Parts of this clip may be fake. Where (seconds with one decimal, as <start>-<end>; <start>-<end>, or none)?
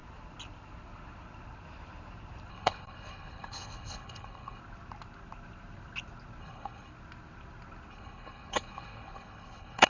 2.5-4.6; 6.4-6.9; 7.9-9.9